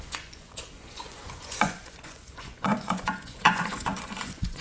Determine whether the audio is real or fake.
fake